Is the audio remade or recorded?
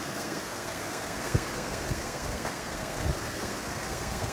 remade